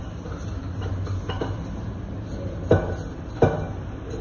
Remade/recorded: recorded